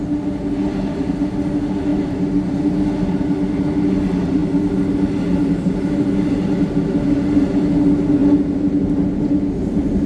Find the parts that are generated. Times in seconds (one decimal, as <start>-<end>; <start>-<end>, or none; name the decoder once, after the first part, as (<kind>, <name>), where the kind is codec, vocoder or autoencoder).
none